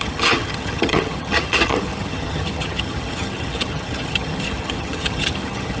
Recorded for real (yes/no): no